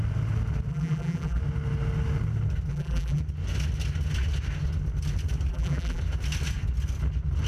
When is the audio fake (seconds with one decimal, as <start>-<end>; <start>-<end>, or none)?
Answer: 0.7-1.4; 2.7-3.2; 5.5-6.0